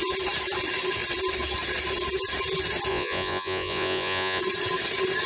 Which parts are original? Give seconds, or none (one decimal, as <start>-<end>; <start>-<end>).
0.0-2.9; 4.4-5.3